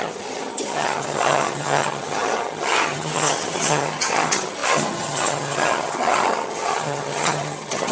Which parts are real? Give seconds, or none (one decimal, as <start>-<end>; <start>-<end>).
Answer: none